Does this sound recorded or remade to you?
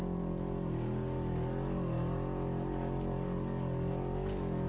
recorded